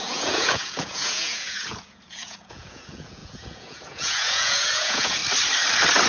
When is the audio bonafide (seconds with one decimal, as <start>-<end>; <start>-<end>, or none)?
5.2-6.1